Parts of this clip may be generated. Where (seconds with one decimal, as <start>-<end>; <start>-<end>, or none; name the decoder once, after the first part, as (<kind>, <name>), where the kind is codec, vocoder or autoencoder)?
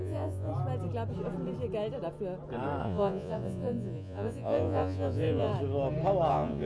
0.0-0.5 (vocoder, Vocos); 2.8-5.5; 6.3-6.7